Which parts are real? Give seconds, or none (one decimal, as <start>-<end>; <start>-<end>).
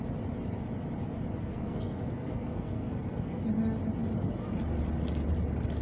0.0-1.4; 3.4-5.8